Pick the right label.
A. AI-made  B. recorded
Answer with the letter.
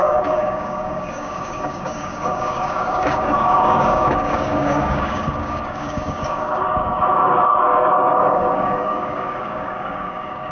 A